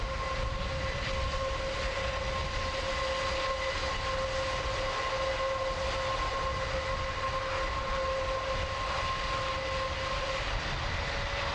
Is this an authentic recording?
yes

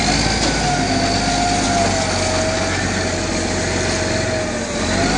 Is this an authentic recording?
yes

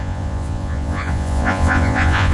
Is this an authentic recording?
no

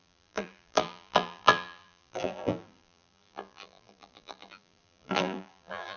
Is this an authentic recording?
no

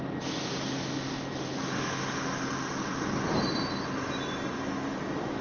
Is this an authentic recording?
yes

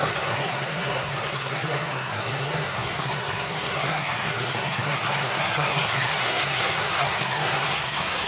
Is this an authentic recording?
no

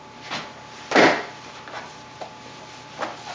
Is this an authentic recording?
yes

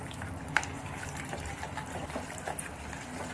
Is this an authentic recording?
yes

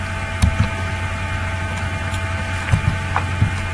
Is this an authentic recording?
yes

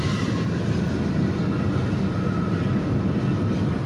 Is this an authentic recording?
yes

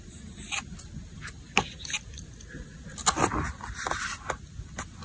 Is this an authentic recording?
yes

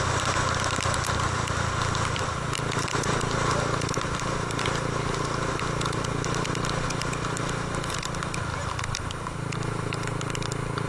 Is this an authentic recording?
yes